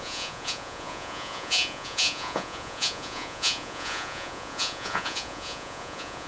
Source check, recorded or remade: remade